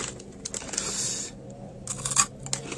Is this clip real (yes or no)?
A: yes